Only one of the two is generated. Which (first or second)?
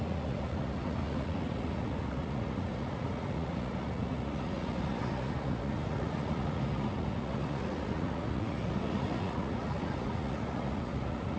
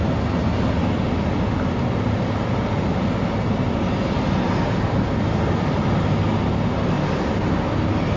first